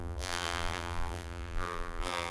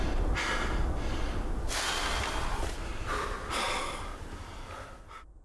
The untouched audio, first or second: second